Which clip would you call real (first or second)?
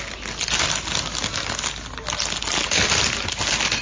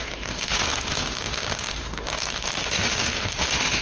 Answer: first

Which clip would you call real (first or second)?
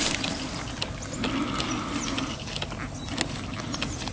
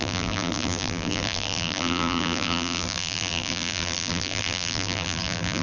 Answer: first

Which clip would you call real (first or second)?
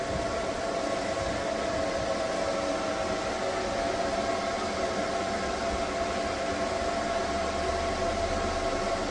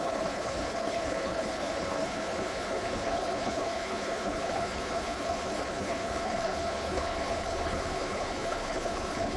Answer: first